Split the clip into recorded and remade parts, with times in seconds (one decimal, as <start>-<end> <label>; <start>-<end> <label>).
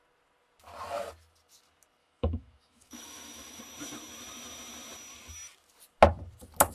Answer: 0.0-2.0 recorded; 2.0-3.6 remade; 3.6-6.7 recorded